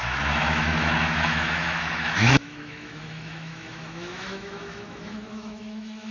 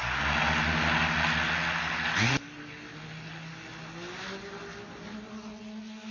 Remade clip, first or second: first